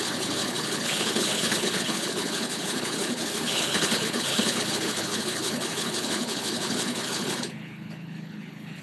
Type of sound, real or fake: fake